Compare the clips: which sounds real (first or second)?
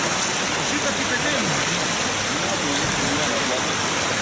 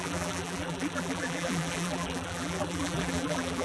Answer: first